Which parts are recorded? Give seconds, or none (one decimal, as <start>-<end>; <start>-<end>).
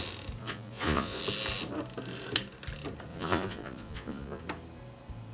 0.0-0.4; 1.2-3.1; 4.4-5.3